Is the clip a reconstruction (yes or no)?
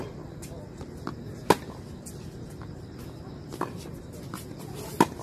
no